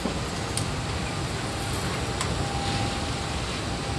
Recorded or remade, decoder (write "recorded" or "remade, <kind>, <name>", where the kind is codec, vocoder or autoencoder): recorded